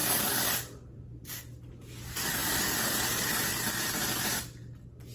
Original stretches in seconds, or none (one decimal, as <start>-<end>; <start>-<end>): 1.2-2.4; 3.3-5.1